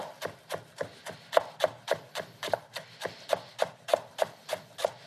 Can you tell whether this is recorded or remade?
recorded